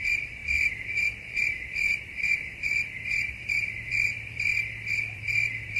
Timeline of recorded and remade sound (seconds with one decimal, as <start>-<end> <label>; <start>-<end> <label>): 0.0-4.5 remade; 4.5-5.1 recorded; 5.1-5.8 remade